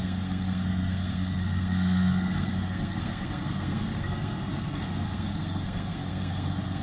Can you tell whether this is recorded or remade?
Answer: remade